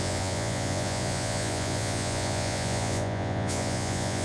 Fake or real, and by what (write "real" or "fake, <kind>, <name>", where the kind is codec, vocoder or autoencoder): fake, vocoder, Vocos